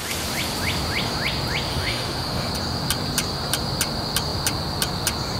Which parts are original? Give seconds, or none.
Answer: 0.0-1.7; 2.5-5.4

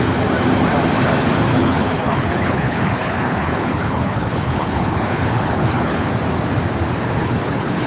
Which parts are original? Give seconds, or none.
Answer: 0.0-1.5; 6.1-7.2

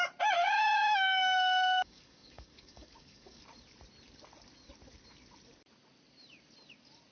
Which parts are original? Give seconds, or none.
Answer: 0.0-0.4; 3.4-7.1

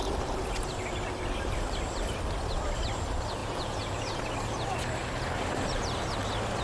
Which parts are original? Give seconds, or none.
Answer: 0.0-3.4; 4.2-6.6